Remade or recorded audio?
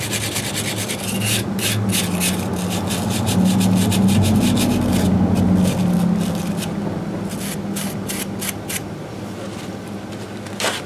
recorded